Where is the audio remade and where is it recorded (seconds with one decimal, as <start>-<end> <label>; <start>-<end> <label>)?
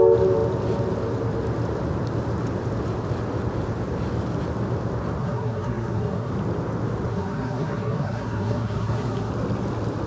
0.0-5.2 recorded; 5.2-6.3 remade; 6.3-7.1 recorded; 7.1-9.3 remade; 9.3-10.1 recorded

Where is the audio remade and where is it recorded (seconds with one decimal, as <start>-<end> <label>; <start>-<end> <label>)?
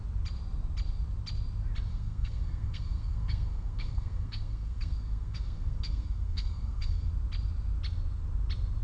0.0-1.9 recorded; 1.9-7.1 remade; 7.1-8.8 recorded